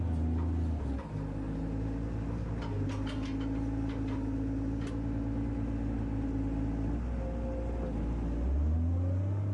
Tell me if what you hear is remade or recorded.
recorded